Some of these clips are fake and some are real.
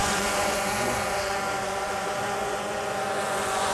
fake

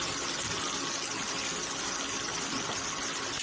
real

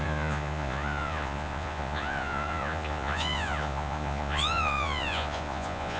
fake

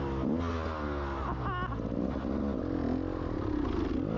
real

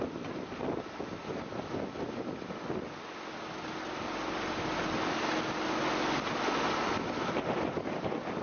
real